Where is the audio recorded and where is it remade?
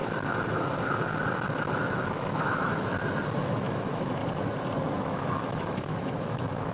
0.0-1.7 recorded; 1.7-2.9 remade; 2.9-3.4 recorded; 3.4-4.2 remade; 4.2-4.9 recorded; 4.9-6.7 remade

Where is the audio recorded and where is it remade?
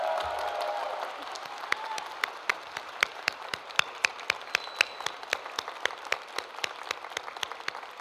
0.0-2.5 recorded; 2.5-4.1 remade; 4.1-8.0 recorded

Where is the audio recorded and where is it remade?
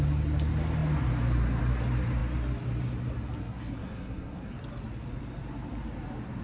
0.0-3.4 recorded; 3.4-4.5 remade; 4.5-6.4 recorded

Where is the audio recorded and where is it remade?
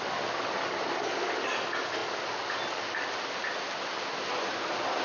0.0-5.0 recorded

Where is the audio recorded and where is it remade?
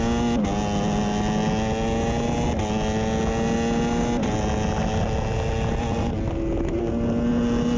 0.0-7.8 recorded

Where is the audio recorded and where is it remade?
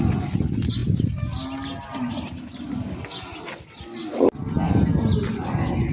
0.0-5.9 recorded